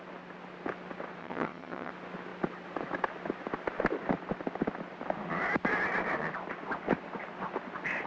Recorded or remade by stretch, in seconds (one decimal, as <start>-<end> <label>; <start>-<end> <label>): 0.0-1.2 recorded; 1.2-1.9 remade; 1.9-8.1 recorded